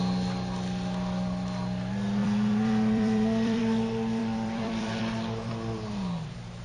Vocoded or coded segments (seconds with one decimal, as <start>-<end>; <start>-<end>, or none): 2.2-3.6; 4.2-5.0